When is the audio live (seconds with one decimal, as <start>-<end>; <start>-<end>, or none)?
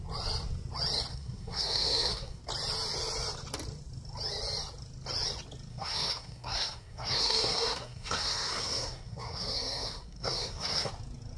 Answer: 0.0-1.1; 2.4-5.7; 10.9-11.4